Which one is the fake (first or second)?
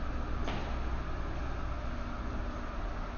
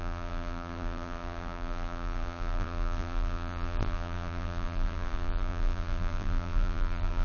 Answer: second